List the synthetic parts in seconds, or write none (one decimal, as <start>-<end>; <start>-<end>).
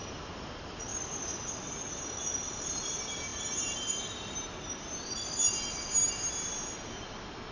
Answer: 0.9-1.5; 3.3-5.9